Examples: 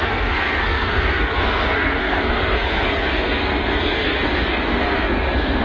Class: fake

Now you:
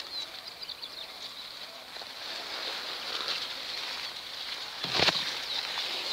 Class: real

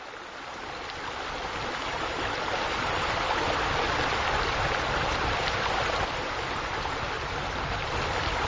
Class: real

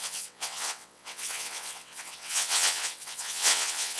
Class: fake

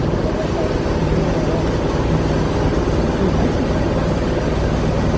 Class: real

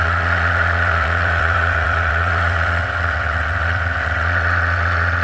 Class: fake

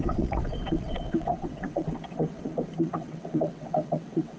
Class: fake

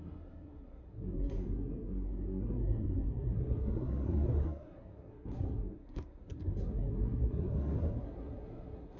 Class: fake